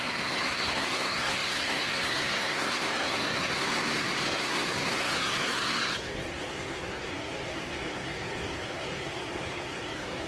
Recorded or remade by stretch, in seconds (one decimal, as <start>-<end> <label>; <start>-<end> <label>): 0.0-10.3 remade